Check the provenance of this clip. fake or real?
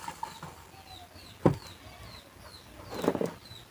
real